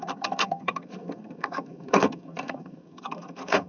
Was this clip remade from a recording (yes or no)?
yes